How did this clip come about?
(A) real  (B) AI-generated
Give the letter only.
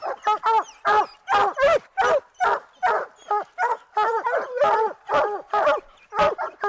A